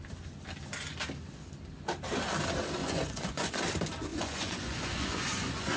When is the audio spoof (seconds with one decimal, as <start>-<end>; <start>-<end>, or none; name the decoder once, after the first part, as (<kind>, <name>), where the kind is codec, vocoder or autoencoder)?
2.8-3.6 (vocoder, Vocos); 4.1-5.8

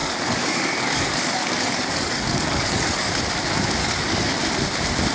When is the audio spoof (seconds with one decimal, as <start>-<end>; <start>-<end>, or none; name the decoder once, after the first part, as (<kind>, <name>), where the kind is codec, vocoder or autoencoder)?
0.0-3.1 (codec, DAC); 3.8-4.4